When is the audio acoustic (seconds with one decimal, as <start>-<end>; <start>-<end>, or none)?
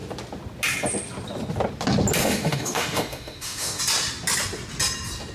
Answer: 0.0-2.2; 3.8-5.3